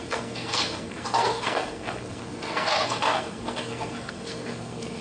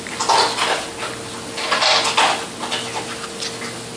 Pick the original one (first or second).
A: second